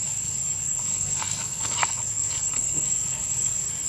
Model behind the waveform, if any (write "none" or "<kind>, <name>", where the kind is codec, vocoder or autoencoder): codec, SNAC